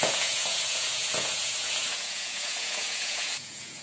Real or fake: fake